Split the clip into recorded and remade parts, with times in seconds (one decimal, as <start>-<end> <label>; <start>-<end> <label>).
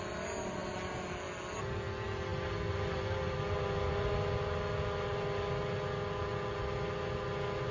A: 0.0-7.7 recorded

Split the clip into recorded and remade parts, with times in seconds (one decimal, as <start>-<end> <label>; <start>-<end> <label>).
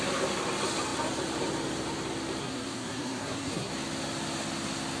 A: 0.0-2.4 recorded; 2.4-3.7 remade; 3.7-5.0 recorded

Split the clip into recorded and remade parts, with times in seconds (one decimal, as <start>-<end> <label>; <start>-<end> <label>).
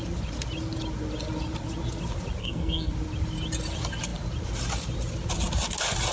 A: 0.0-2.4 recorded; 2.4-2.9 remade; 2.9-6.1 recorded